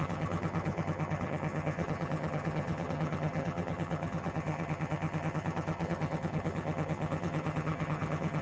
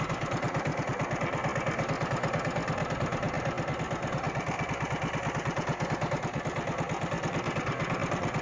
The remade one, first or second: first